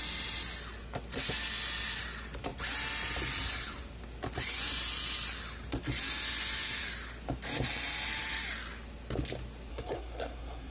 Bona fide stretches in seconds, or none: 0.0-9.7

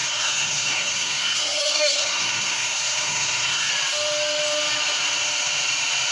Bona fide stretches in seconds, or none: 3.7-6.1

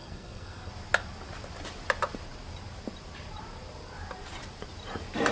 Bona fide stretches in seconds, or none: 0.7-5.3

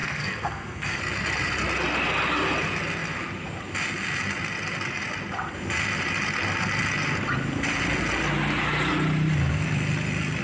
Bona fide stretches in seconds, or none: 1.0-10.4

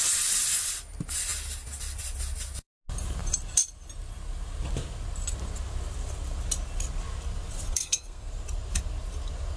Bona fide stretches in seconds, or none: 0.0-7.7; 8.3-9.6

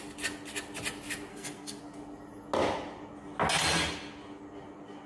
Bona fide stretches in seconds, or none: 0.0-1.3; 1.8-5.1

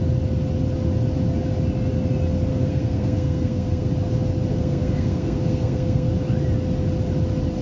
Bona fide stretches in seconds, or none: 0.0-2.5; 3.9-4.5; 6.1-7.6